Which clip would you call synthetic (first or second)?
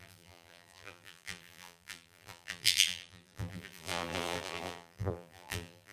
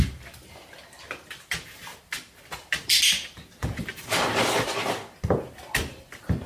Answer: first